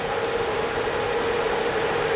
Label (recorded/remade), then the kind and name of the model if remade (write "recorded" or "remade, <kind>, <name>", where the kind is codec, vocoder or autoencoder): recorded